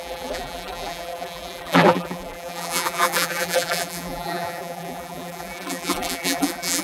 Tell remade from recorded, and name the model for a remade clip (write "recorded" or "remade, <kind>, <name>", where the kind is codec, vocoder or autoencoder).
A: remade, vocoder, BigVGAN v2